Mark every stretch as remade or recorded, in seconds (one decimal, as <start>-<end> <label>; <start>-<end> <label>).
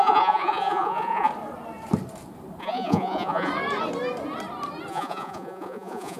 0.0-1.3 remade; 1.3-2.6 recorded; 2.6-3.5 remade; 3.5-4.9 recorded; 4.9-6.2 remade